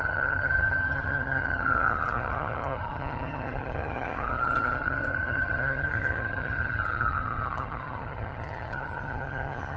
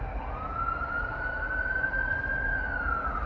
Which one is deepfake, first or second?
first